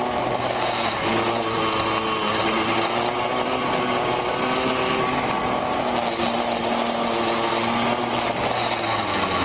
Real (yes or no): yes